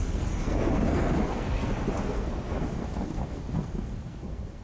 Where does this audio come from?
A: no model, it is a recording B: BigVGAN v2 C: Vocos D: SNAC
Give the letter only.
D